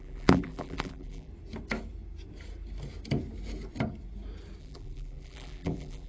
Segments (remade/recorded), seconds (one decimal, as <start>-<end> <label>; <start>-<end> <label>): 0.0-1.3 remade; 1.3-4.6 recorded; 4.6-6.1 remade